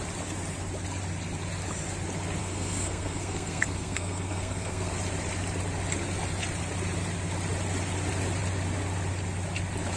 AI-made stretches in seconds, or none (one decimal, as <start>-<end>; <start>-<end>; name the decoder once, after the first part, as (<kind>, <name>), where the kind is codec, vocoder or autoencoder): 2.4-4.9 (codec, SNAC)

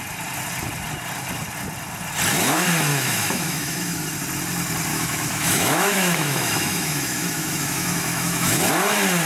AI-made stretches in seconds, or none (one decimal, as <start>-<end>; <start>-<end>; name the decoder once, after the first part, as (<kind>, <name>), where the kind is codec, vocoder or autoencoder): 2.9-4.0 (autoencoder, DAC-VAE); 4.9-8.7

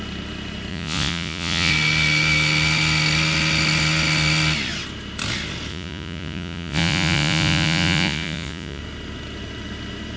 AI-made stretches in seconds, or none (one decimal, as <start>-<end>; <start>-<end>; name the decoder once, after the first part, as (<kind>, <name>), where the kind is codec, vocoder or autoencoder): 0.7-1.7 (vocoder, Vocos); 5.7-8.8

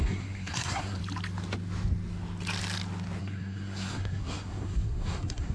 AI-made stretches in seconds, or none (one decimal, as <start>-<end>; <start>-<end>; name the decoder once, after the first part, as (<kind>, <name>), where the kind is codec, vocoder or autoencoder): 0.0-1.0 (codec, SNAC); 3.2-5.5

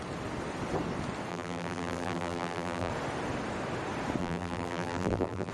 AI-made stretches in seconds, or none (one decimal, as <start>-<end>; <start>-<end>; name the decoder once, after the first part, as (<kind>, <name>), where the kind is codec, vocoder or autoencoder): 1.3-2.9 (vocoder, BigVGAN v2); 4.2-5.5

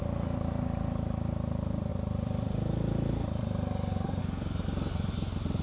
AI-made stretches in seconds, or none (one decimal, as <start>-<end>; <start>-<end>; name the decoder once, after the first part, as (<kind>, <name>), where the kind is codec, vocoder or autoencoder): 1.9-4.2 (vocoder, BigVGAN v2)

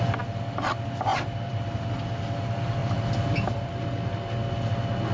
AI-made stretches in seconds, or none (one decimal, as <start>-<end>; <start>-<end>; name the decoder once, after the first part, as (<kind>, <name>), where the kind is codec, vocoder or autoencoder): 1.1-1.9 (vocoder, BigVGAN v2); 2.8-3.7